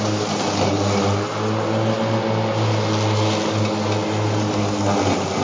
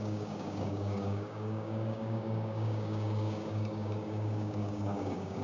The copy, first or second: second